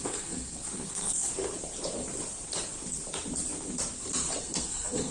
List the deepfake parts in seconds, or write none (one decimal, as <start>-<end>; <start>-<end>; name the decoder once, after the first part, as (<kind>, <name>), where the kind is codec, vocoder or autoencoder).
0.0-1.3 (codec, SNAC); 4.4-5.1